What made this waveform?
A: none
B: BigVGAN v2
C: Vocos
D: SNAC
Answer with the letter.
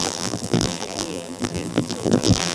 B